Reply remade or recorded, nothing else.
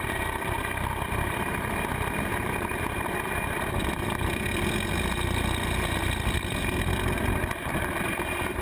remade